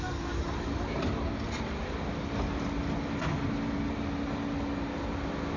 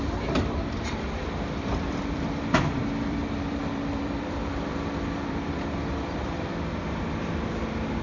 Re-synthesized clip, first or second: second